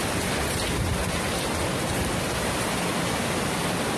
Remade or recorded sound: recorded